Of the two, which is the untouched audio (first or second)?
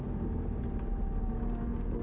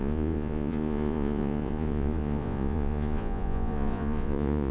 first